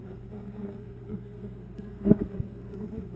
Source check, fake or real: fake